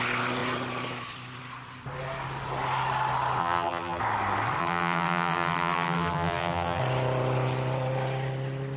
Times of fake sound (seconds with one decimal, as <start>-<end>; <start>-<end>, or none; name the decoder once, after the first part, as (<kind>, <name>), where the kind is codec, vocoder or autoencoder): 3.4-4.0 (vocoder, BigVGAN v2); 4.6-6.8